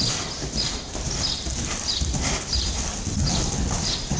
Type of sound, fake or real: real